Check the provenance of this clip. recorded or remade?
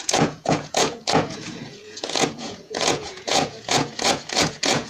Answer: remade